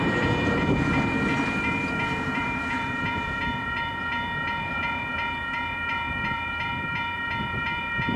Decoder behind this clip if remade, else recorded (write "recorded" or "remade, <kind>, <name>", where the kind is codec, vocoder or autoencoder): remade, vocoder, BigVGAN v2